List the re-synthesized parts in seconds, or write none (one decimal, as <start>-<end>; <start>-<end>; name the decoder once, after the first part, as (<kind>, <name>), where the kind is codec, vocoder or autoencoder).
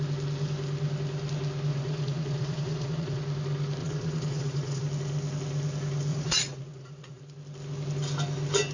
1.7-3.2 (vocoder, Vocos); 3.8-4.8; 6.1-7.2